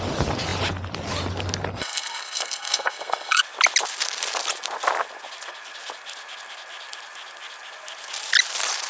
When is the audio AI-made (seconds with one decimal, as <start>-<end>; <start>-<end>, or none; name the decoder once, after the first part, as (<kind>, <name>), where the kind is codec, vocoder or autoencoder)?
1.8-3.4 (codec, SNAC)